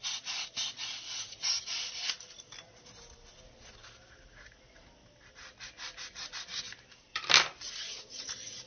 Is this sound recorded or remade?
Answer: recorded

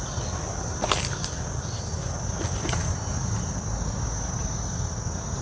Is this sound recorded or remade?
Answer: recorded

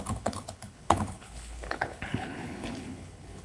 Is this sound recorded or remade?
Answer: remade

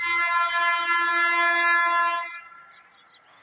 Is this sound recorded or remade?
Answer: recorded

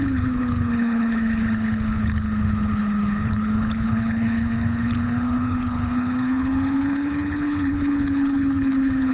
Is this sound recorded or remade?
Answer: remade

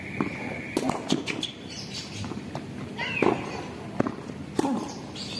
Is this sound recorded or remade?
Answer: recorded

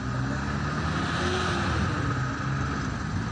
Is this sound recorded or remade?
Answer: recorded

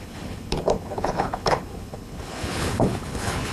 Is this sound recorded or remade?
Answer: remade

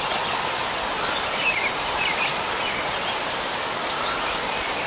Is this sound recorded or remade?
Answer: recorded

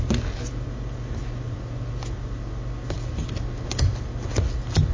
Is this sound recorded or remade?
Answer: recorded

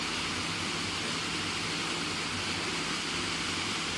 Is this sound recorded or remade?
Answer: recorded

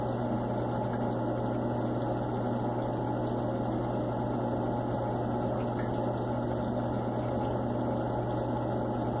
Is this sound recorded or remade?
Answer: recorded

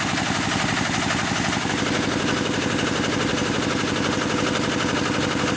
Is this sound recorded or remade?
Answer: recorded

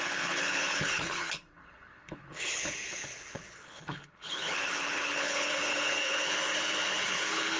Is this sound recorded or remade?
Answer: remade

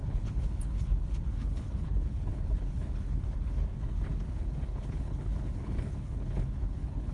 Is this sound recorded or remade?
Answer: remade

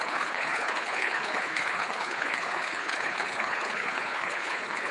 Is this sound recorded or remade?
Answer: remade